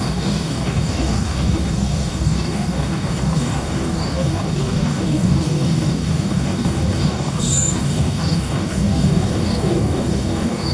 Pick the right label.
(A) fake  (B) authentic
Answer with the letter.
A